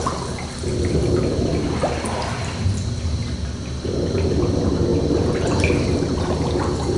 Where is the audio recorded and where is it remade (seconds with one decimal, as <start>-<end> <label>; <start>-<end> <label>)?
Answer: 0.0-7.0 recorded